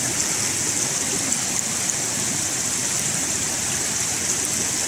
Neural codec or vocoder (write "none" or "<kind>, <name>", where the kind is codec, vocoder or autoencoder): none